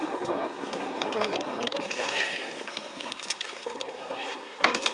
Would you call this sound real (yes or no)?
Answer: no